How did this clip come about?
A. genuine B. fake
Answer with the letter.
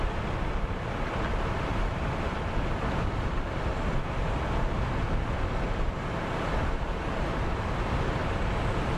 A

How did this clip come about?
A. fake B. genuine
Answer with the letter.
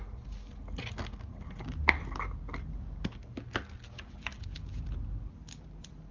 B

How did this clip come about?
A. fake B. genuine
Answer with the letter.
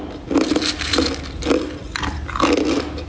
B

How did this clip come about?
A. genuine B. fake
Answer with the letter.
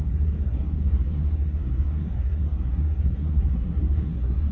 B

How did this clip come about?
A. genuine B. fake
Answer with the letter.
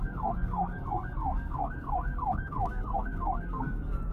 B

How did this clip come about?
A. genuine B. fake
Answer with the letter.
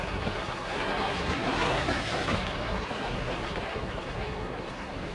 B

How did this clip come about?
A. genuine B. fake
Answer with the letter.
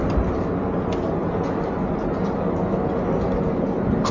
A